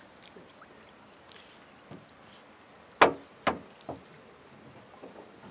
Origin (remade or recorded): recorded